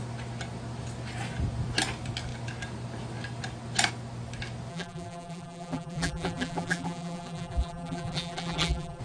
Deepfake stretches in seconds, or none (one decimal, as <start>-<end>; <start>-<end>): 4.7-9.0